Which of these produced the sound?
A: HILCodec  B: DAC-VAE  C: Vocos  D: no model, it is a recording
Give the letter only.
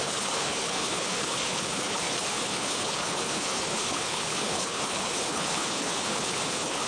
A